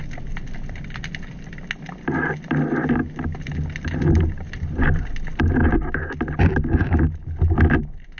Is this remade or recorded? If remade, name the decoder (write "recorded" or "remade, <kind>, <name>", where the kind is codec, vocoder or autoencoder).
recorded